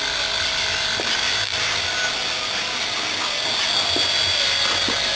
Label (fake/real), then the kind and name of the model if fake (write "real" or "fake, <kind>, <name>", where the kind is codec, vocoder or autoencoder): real